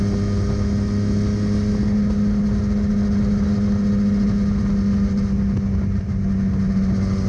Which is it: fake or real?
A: real